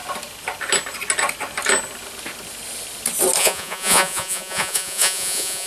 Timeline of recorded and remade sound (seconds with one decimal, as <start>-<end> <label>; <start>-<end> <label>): 0.0-3.4 recorded; 3.4-5.7 remade